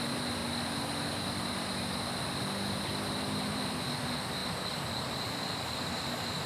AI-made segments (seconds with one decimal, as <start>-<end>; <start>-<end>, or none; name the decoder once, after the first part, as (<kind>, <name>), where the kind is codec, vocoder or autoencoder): 0.0-0.4 (vocoder, BigVGAN v2); 3.4-4.4; 5.3-6.5